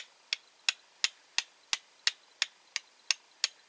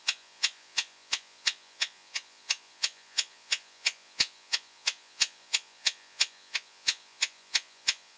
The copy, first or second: second